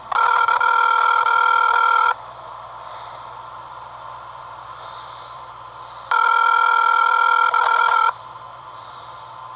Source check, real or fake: fake